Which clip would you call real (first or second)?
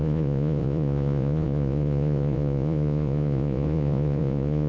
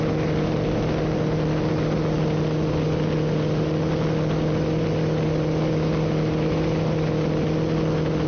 second